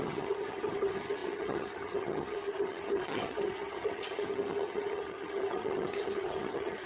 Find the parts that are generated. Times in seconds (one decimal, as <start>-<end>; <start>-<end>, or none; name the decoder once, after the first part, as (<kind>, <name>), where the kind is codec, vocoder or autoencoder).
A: 0.0-6.9 (vocoder, HiFi-GAN)